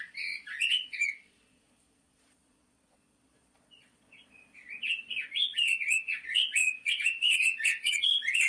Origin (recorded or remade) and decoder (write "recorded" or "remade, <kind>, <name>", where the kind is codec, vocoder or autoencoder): remade, vocoder, Vocos